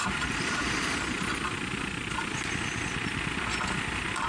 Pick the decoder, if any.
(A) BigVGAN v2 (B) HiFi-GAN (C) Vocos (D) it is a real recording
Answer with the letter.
D